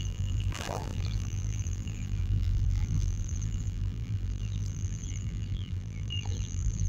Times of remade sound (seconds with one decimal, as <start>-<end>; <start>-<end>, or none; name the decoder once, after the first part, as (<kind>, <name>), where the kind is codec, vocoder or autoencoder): 0.0-6.9 (vocoder, BigVGAN v2)